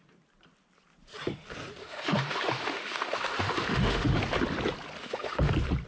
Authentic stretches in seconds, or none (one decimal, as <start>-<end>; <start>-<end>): 0.0-1.8; 4.2-5.0; 5.5-5.9

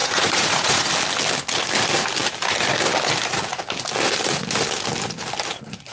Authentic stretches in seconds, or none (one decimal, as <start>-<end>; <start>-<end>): 0.9-5.9

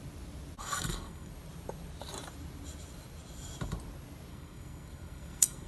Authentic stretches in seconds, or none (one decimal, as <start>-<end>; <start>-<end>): 0.0-0.6; 1.3-4.3